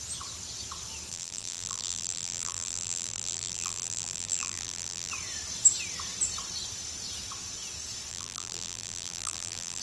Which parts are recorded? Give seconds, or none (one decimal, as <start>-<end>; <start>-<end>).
0.0-1.1; 5.1-8.1